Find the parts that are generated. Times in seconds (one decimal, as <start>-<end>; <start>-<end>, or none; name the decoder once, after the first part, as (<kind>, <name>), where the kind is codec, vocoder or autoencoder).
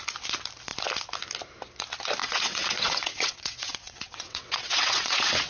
2.2-5.5 (vocoder, WaveNeXt)